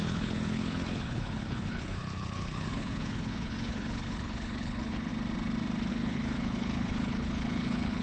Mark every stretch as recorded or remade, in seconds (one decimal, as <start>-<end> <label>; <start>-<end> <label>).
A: 0.0-5.1 remade; 5.1-5.9 recorded; 5.9-8.0 remade